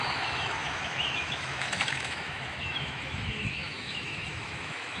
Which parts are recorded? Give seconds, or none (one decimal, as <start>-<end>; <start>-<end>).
none